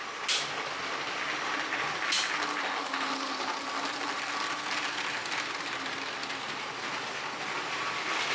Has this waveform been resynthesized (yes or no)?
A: no